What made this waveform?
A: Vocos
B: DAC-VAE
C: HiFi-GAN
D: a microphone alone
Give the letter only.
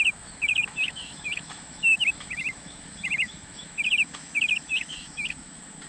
B